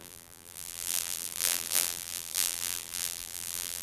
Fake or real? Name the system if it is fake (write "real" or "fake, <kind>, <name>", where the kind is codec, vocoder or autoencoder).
fake, vocoder, BigVGAN v2